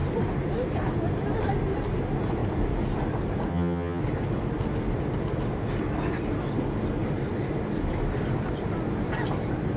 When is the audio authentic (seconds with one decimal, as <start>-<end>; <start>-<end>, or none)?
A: 0.0-3.5; 4.0-9.8